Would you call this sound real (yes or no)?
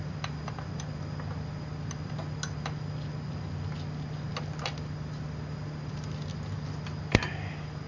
yes